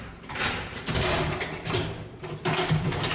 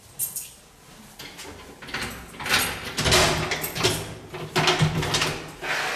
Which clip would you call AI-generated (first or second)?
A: first